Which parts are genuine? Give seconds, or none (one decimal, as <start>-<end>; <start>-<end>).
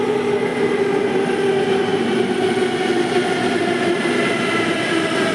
0.0-5.3